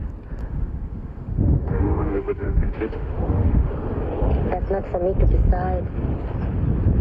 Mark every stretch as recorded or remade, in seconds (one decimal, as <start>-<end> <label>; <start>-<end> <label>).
0.0-0.4 recorded; 0.4-3.7 remade; 3.7-7.0 recorded